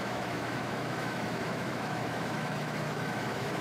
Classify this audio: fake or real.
fake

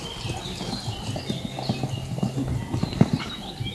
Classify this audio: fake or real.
real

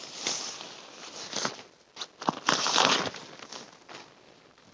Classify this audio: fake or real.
real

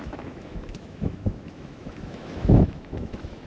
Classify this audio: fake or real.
fake